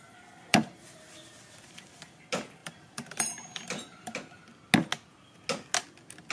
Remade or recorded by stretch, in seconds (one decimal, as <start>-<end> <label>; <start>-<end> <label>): 0.0-0.5 recorded; 0.5-1.0 remade; 1.0-2.6 recorded; 2.6-4.4 remade; 4.4-6.3 recorded